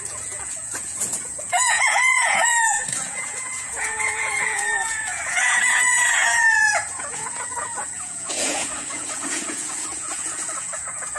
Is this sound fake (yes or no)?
yes